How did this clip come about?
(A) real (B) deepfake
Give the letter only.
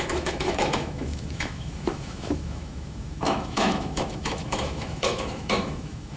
B